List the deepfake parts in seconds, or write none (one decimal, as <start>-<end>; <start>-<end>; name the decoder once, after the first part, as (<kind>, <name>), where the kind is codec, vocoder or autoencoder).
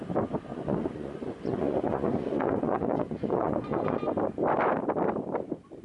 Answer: 0.5-4.0 (vocoder, Vocos)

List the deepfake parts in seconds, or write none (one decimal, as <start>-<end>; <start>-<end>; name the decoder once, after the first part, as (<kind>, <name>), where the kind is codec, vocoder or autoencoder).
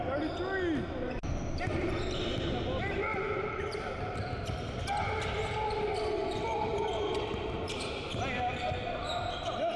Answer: 3.1-4.8 (vocoder, BigVGAN v2); 6.7-8.0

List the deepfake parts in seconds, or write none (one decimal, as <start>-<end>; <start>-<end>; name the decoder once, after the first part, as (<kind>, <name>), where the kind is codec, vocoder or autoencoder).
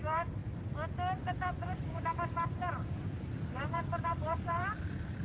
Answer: 0.0-0.4 (vocoder, BigVGAN v2); 1.9-5.2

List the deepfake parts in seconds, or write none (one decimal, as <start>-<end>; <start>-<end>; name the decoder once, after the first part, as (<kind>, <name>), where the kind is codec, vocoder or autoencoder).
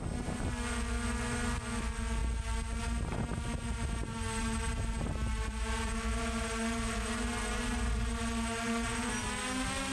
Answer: 4.1-9.1 (vocoder, BigVGAN v2)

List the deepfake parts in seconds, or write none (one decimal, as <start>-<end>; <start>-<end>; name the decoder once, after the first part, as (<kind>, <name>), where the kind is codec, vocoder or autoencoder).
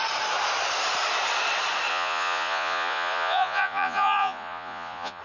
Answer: 1.9-5.2 (vocoder, Vocos)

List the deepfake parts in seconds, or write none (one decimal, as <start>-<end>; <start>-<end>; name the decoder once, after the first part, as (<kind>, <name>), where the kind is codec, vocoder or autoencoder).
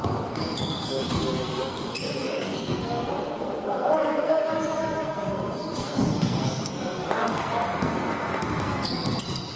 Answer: 0.0-9.6 (codec, SNAC)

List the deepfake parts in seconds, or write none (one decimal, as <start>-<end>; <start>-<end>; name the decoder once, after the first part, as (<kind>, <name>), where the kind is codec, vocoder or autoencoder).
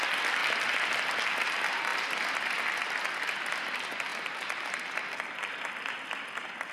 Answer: none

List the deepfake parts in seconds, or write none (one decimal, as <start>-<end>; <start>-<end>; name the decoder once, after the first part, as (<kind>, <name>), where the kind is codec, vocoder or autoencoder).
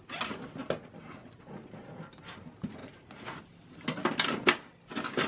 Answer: 1.2-1.7 (vocoder, Vocos); 2.8-3.4